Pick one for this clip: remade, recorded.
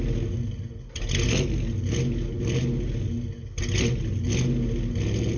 recorded